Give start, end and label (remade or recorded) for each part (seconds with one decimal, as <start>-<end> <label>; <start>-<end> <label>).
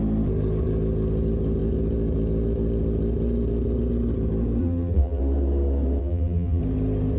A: 0.0-4.6 recorded; 4.6-5.2 remade; 5.2-6.0 recorded; 6.0-6.6 remade; 6.6-7.2 recorded